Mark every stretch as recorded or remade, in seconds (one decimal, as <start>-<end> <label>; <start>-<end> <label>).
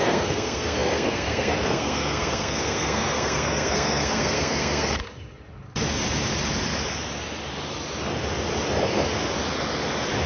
0.0-5.0 remade; 5.0-10.3 recorded